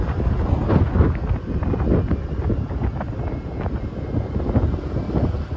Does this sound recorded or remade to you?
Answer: recorded